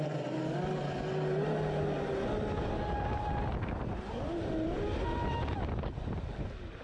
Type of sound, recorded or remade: recorded